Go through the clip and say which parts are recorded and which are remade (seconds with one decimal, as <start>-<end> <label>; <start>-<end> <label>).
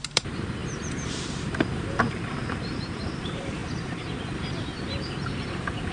0.0-5.9 remade